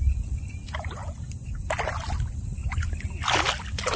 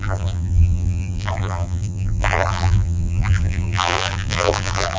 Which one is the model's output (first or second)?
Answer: second